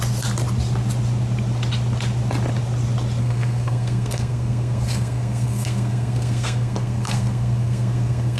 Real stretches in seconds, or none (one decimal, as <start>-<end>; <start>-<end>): 0.0-3.2